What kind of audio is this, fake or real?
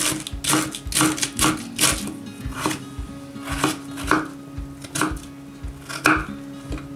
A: real